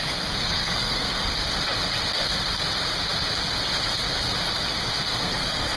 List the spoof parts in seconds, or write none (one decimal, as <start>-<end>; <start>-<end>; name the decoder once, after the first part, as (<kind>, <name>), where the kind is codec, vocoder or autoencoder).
0.4-1.3 (codec, SNAC); 5.1-5.8